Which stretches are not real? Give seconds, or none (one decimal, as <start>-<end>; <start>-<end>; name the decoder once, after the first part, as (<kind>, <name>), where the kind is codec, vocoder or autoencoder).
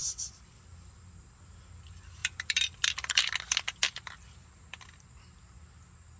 0.0-1.4 (vocoder, BigVGAN v2); 2.2-3.1